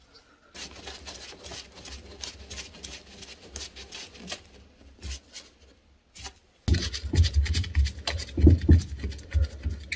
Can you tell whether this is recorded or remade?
recorded